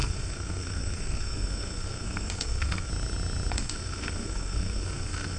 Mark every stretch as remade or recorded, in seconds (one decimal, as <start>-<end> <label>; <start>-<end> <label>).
0.0-2.9 remade; 2.9-3.5 recorded; 3.5-5.4 remade